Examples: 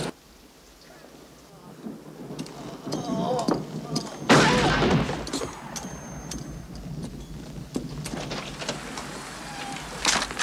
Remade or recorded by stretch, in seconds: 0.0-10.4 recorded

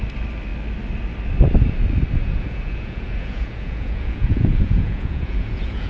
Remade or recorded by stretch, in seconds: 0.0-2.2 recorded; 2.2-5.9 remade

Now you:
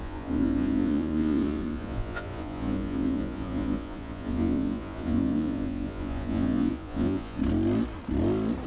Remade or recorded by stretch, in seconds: 0.0-7.4 remade; 7.4-8.7 recorded

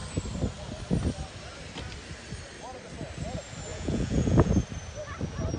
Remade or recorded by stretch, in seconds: 0.0-3.7 recorded; 3.7-4.5 remade; 4.5-5.6 recorded

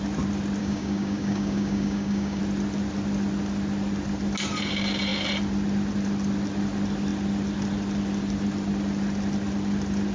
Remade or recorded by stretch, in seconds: 0.0-0.6 recorded; 0.6-2.4 remade; 2.4-10.1 recorded